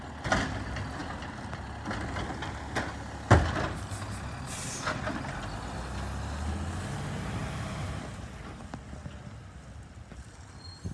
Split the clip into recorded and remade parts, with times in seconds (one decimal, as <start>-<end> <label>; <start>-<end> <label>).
0.0-10.9 recorded